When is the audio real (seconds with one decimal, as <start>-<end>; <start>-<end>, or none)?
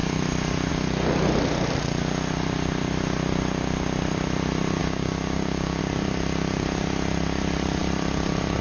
0.0-4.8; 5.8-8.6